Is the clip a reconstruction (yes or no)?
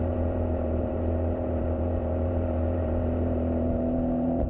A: yes